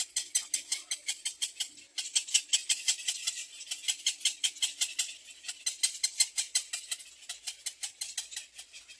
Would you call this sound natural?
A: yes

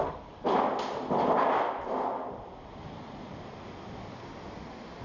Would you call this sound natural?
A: yes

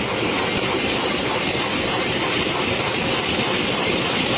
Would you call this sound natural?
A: yes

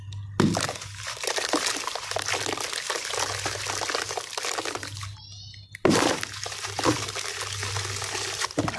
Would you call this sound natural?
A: yes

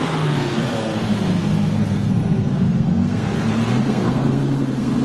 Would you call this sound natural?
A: no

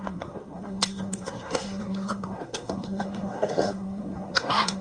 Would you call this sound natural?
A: no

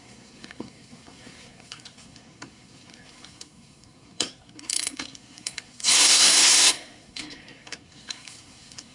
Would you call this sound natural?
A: no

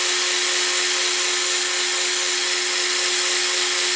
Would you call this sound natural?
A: yes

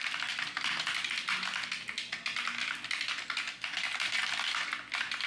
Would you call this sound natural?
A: yes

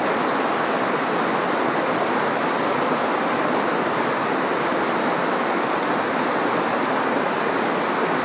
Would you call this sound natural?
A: yes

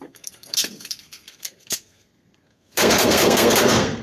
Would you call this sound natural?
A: no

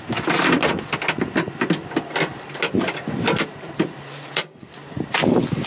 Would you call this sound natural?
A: yes